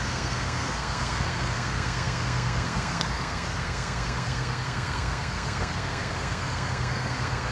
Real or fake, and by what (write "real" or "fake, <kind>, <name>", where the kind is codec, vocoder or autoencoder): fake, codec, SNAC